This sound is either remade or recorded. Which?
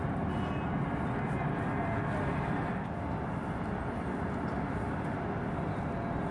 recorded